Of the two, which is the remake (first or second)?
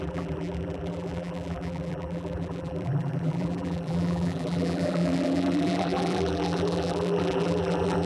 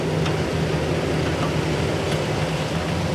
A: first